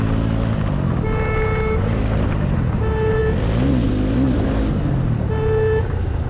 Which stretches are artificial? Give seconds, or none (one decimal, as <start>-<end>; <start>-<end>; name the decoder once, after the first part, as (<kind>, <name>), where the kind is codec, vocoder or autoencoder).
none